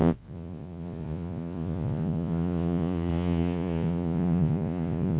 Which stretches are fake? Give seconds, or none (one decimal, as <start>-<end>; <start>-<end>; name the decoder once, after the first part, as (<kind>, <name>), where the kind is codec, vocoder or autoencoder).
0.0-5.2 (vocoder, Vocos)

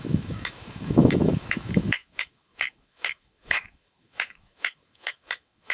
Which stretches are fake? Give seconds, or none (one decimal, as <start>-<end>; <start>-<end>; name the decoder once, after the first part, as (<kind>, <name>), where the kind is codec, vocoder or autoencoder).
0.0-5.7 (autoencoder, DAC-VAE)

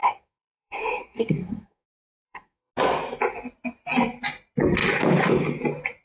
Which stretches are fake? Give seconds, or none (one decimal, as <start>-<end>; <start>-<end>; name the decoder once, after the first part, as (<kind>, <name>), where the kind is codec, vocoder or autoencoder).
0.0-2.7 (codec, SNAC)

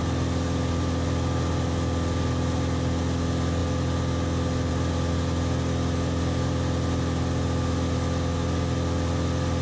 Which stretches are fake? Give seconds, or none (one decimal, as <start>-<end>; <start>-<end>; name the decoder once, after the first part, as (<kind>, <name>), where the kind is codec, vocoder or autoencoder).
none

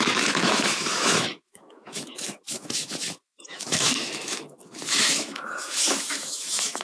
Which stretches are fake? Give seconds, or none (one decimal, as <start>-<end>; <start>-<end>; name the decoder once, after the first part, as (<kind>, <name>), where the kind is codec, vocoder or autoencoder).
0.0-6.8 (autoencoder, DAC-VAE)